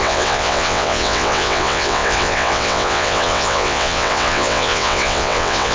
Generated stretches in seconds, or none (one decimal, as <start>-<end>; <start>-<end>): 0.0-5.7

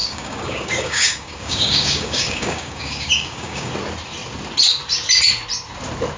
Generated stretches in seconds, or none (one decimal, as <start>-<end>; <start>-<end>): 0.0-3.7